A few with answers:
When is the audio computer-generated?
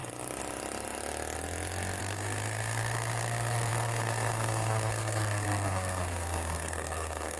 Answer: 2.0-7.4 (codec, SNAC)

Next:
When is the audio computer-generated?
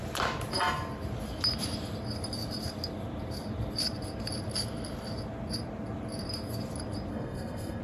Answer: 7.1-7.8 (codec, SNAC)